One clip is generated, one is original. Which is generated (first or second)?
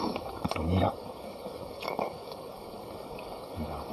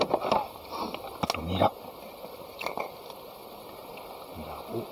first